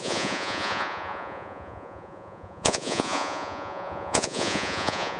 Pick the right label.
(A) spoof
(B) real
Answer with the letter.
A